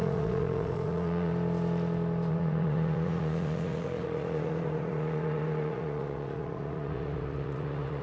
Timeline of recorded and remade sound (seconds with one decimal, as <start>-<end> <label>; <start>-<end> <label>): 0.0-1.3 remade; 1.3-2.3 recorded; 2.3-8.0 remade